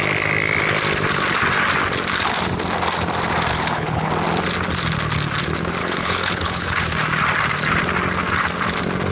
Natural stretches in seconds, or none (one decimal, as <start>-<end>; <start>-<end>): 0.0-3.5; 4.1-5.8; 6.8-9.1